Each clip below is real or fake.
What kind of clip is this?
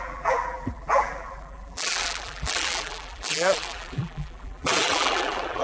fake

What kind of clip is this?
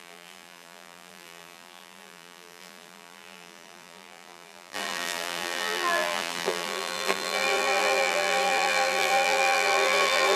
fake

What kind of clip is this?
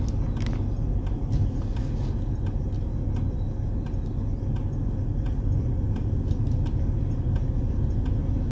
real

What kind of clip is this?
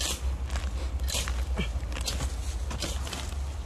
real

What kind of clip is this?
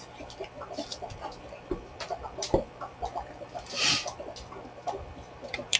fake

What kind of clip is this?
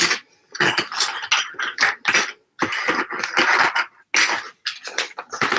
real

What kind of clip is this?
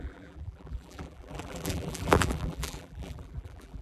fake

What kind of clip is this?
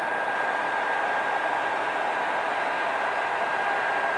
real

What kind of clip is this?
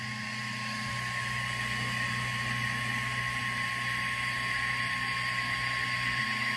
real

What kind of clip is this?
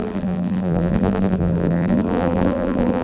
fake